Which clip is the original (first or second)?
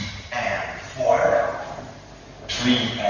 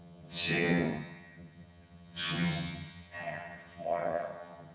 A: first